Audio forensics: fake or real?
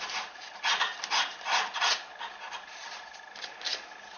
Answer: real